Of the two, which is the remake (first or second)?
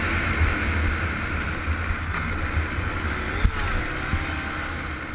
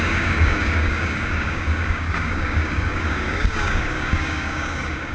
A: second